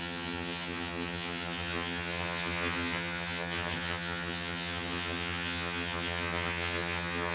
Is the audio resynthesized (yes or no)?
yes